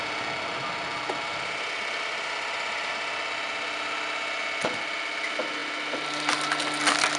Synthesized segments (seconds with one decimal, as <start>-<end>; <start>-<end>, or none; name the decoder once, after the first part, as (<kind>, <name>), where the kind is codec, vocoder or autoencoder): 0.9-2.9 (vocoder, BigVGAN v2)